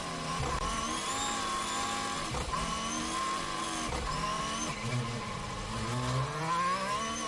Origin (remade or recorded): recorded